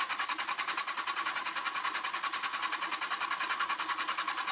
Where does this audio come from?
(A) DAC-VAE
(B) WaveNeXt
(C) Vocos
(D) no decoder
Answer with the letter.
D